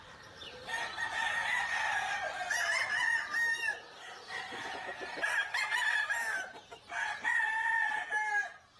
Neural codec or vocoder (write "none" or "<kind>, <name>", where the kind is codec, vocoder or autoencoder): none